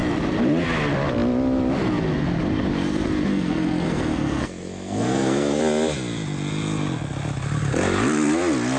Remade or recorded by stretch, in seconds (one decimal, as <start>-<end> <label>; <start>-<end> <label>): 0.0-3.3 recorded; 3.3-5.6 remade; 5.6-8.8 recorded

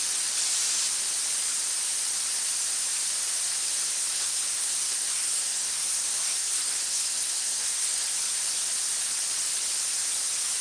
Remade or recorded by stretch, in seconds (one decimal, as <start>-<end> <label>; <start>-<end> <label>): 0.0-4.1 recorded; 4.1-8.1 remade; 8.1-10.6 recorded